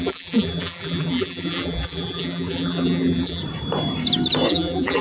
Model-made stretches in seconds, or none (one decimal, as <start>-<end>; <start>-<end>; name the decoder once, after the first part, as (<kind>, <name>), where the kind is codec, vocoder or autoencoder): 0.0-3.4 (vocoder, BigVGAN v2); 4.5-5.0